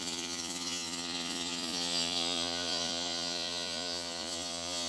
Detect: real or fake fake